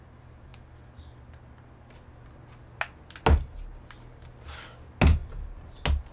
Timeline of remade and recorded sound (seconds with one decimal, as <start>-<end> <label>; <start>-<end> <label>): 0.0-6.1 recorded